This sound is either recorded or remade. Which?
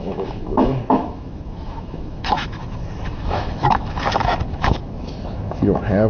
remade